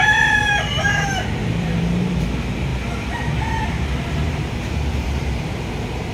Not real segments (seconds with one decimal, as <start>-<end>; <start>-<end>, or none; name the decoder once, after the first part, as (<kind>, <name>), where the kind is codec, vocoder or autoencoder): 0.0-2.7 (vocoder, BigVGAN v2); 3.6-6.1